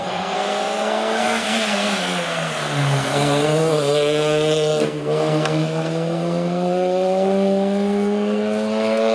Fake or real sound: fake